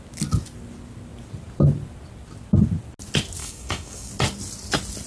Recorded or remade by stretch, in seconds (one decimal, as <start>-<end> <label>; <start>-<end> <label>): 0.0-3.4 recorded; 3.4-4.1 remade; 4.1-5.1 recorded

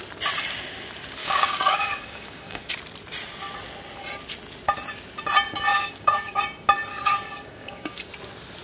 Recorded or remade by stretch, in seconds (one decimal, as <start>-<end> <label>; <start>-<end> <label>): 0.0-1.2 recorded; 1.2-2.7 remade; 2.7-5.7 recorded; 5.7-6.4 remade; 6.4-6.9 recorded; 6.9-8.1 remade; 8.1-8.6 recorded

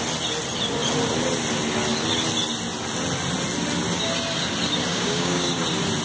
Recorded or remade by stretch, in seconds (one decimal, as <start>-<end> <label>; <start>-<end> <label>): 0.0-4.9 recorded; 4.9-5.6 remade; 5.6-6.0 recorded

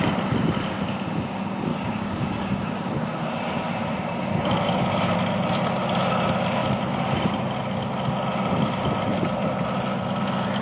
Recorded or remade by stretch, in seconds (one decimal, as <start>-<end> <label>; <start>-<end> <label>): 0.0-1.7 recorded; 1.7-2.8 remade; 2.8-10.6 recorded

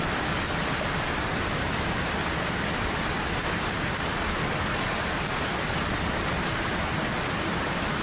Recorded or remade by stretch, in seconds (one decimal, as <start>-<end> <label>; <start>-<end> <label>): 0.0-4.4 recorded; 4.4-5.1 remade; 5.1-8.0 recorded

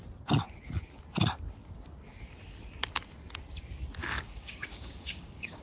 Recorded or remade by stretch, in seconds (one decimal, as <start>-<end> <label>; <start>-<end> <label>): 0.0-4.0 recorded; 4.0-5.6 remade

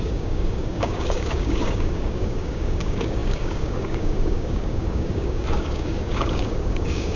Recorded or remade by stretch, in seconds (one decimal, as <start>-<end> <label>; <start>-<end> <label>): 0.0-7.2 remade